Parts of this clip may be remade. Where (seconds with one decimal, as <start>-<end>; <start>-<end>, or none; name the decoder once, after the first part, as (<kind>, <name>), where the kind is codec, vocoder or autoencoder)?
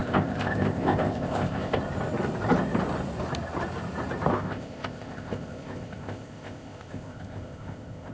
0.0-1.8 (codec, ZipCodec); 4.3-8.1